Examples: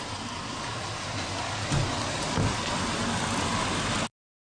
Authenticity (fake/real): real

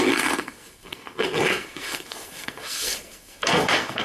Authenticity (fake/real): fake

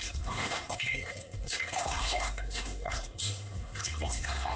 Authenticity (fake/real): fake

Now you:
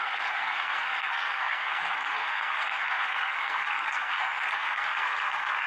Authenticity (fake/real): fake